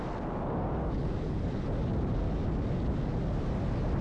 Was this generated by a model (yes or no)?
no